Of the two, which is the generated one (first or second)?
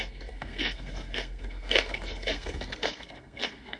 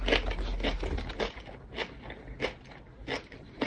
first